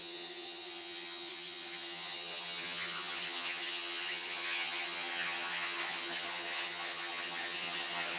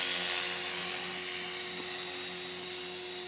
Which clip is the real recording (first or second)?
second